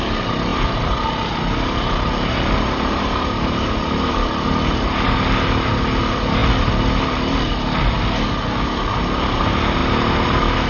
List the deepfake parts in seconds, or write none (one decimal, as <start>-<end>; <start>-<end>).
0.5-5.2

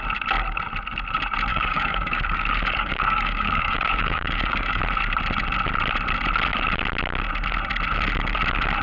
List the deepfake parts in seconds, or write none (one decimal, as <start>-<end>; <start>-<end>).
1.5-4.8

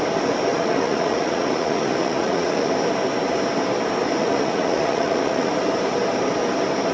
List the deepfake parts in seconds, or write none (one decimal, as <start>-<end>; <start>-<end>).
0.5-2.7; 4.2-5.5

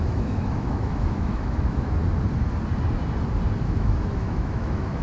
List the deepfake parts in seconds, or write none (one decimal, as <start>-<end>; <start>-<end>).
0.0-2.0; 3.6-5.0

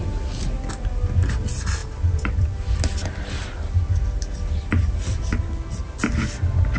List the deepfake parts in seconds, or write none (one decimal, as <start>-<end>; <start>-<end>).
none

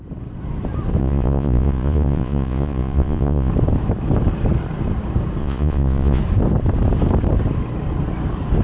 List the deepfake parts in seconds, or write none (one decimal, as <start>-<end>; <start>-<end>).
1.0-3.5; 5.4-6.2